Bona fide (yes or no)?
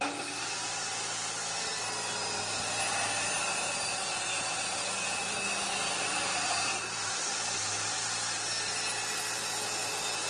yes